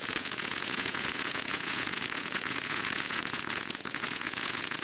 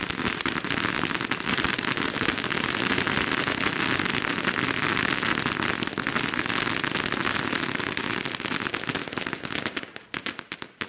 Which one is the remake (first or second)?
first